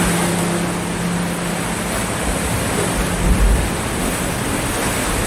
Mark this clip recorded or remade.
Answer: recorded